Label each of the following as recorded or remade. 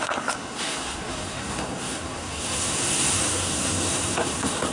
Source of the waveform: remade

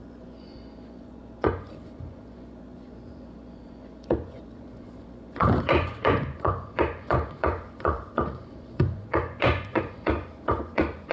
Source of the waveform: remade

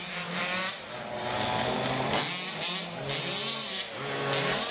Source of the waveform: recorded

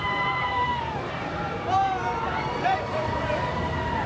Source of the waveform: remade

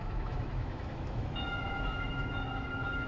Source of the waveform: remade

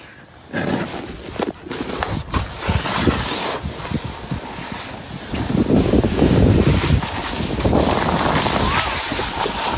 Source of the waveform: recorded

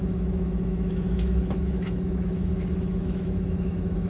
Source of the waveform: remade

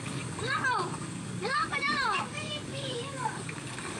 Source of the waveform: remade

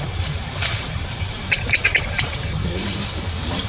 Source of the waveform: remade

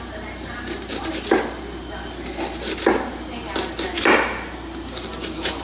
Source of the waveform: recorded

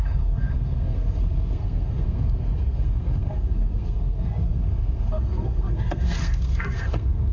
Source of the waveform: remade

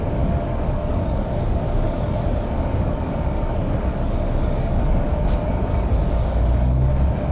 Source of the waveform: remade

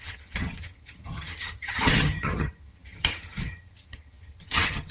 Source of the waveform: remade